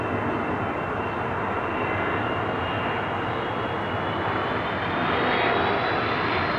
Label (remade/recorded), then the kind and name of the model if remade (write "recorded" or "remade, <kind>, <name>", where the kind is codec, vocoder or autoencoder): recorded